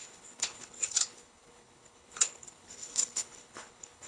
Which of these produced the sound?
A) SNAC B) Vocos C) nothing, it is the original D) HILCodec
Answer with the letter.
D